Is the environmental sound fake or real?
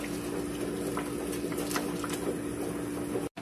real